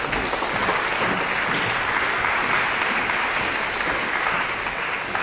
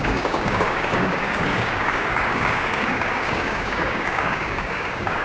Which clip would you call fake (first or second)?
second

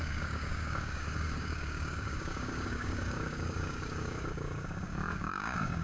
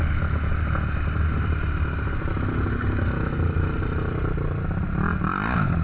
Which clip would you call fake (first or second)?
first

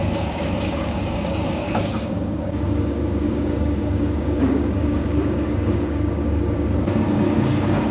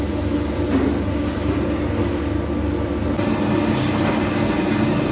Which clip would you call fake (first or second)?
first